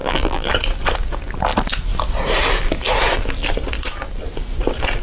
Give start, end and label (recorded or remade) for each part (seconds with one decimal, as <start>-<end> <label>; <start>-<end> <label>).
0.0-0.5 remade; 0.5-5.0 recorded